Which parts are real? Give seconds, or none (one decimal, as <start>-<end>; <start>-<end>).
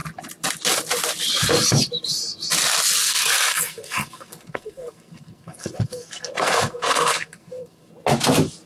0.0-3.0; 7.9-8.7